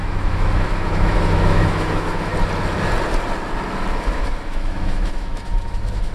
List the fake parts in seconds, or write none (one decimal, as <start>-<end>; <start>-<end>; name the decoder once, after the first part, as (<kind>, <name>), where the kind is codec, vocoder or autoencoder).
0.0-2.3 (autoencoder, DAC-VAE); 4.0-6.1